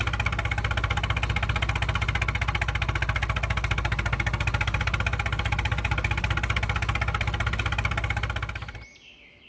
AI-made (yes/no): no